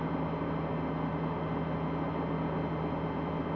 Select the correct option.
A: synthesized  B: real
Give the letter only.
B